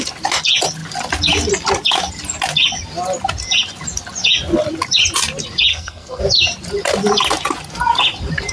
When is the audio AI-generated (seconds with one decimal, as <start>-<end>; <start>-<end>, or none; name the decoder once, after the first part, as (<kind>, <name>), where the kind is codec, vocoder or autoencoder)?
5.7-6.2 (codec, SNAC)